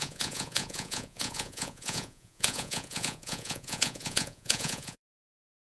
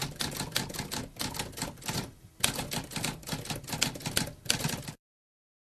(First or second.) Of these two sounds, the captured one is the second